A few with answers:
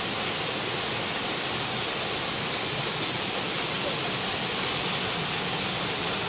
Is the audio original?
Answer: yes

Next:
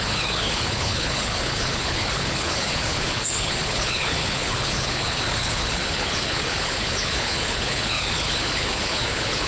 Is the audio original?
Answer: no